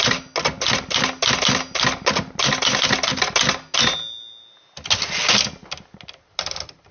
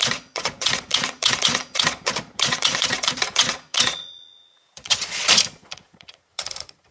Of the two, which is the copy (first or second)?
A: second